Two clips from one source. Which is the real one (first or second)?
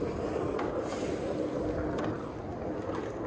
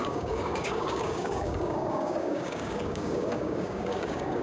first